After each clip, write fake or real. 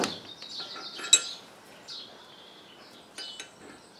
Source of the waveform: real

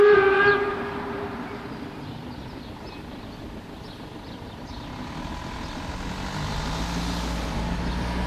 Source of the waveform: real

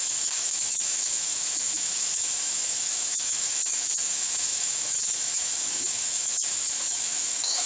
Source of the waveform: fake